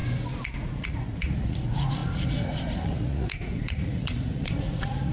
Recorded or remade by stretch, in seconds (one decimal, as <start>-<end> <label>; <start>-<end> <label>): 0.0-0.6 recorded; 0.6-5.1 remade